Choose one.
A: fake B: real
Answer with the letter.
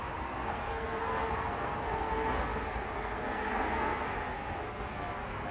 A